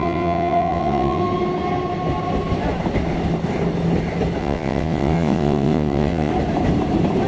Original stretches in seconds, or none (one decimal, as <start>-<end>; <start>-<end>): 1.2-4.4; 6.3-7.3